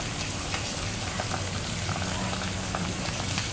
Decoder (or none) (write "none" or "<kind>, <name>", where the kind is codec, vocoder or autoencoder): none